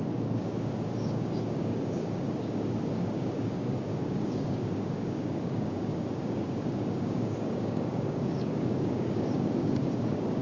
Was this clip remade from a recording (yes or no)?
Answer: yes